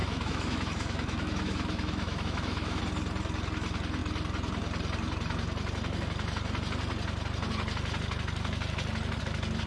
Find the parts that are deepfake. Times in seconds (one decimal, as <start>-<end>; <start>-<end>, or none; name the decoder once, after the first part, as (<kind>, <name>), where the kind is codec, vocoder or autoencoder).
0.0-2.8 (autoencoder, DAC-VAE)